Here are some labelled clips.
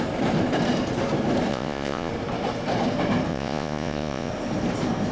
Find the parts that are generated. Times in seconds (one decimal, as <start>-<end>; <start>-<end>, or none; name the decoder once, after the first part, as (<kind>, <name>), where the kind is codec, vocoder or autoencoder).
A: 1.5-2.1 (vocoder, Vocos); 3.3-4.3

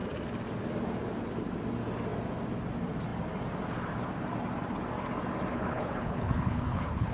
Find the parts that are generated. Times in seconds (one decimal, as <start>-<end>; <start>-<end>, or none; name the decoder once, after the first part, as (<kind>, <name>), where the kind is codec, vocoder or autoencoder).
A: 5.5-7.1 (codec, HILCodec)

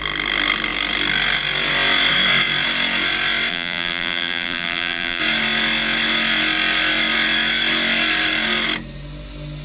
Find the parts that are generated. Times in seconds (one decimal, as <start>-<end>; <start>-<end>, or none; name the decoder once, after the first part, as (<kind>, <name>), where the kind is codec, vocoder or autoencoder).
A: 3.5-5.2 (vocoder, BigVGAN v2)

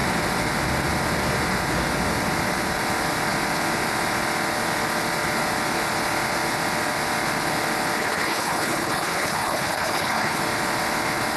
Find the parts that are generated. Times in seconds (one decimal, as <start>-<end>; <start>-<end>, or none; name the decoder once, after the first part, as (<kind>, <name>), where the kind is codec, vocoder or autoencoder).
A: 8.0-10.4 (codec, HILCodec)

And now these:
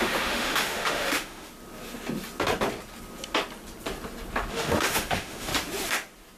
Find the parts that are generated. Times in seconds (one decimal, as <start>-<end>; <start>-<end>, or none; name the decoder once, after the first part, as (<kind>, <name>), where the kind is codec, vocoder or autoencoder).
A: 0.0-1.5 (autoencoder, DAC-VAE); 4.5-5.5